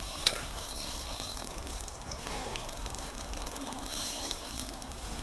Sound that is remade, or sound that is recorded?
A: remade